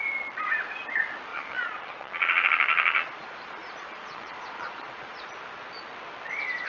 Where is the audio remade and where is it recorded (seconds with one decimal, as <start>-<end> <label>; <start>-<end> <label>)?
0.0-1.3 recorded; 1.3-5.3 remade; 5.3-6.7 recorded